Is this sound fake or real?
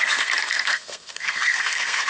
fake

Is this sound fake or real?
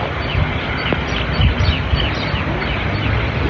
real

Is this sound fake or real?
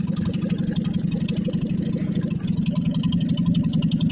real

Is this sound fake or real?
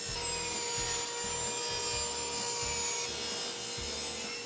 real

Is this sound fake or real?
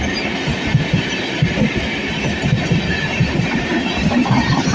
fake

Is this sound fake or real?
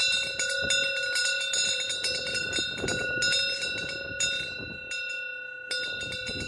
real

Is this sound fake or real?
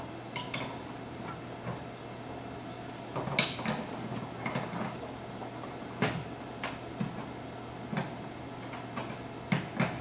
real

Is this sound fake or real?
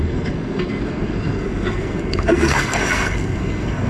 fake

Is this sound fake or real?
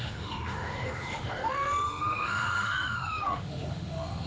fake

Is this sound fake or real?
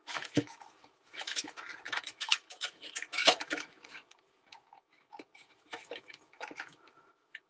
fake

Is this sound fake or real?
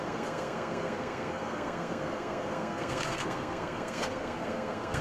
fake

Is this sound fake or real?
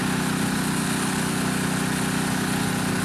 real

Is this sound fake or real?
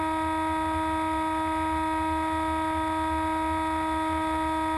real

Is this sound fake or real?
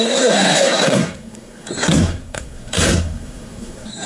fake